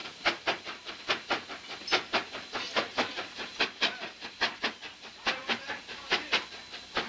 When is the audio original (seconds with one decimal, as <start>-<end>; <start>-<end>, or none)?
0.0-7.1